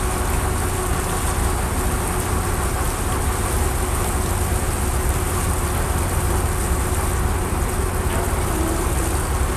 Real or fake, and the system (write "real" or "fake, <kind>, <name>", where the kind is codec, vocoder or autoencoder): real